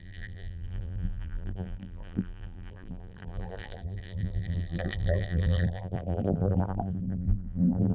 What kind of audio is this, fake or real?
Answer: fake